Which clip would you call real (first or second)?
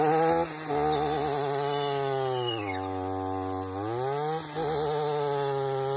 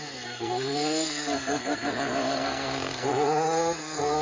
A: first